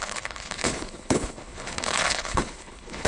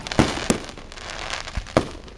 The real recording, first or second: second